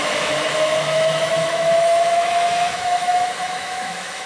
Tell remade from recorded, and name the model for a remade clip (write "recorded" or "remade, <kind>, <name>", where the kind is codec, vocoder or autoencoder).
remade, autoencoder, DAC-VAE